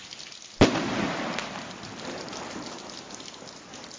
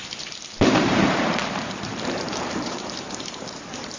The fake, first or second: second